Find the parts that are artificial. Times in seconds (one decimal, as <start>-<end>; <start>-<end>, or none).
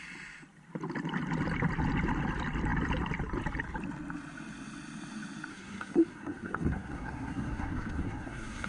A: 5.5-8.7